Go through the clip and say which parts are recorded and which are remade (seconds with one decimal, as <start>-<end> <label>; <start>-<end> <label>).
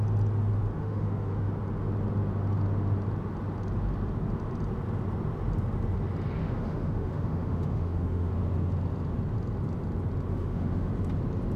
0.0-0.8 recorded; 0.8-1.5 remade; 1.5-6.4 recorded; 6.4-8.3 remade; 8.3-10.3 recorded; 10.3-10.9 remade; 10.9-11.6 recorded